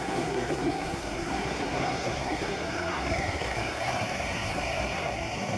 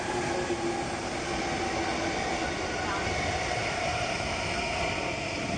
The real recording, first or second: second